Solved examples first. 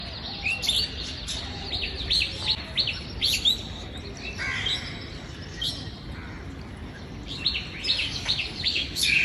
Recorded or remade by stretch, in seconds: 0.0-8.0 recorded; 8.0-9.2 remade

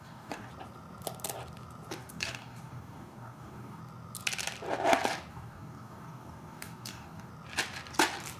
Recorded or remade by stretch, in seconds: 0.0-0.5 remade; 0.5-1.9 recorded; 1.9-3.8 remade; 3.8-5.3 recorded; 5.3-7.3 remade; 7.3-8.4 recorded

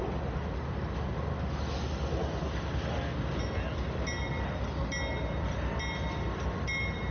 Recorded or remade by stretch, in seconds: 0.0-7.1 recorded

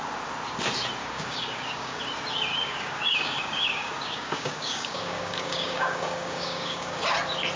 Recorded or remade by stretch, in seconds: 0.0-1.0 recorded; 1.0-2.0 remade; 2.0-2.5 recorded; 2.5-7.0 remade; 7.0-7.6 recorded

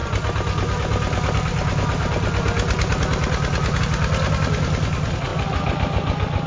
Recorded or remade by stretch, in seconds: 0.0-6.5 recorded

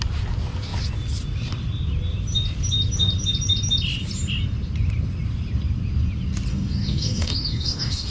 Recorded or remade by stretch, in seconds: 0.0-6.5 recorded; 6.5-8.1 remade